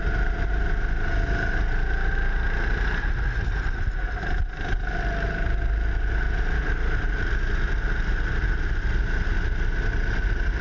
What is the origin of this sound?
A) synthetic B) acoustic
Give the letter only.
B